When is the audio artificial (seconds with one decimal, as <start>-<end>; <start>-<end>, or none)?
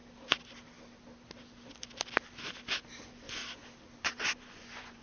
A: 3.0-3.4; 4.0-5.0